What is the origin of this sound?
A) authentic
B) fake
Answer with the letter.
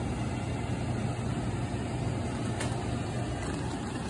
A